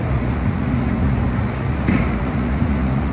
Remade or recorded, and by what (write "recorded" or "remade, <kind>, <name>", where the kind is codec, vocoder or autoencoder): remade, vocoder, Vocos